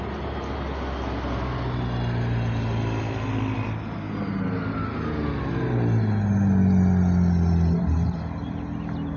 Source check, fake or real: real